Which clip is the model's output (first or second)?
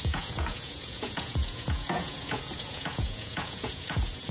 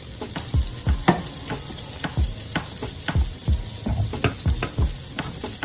first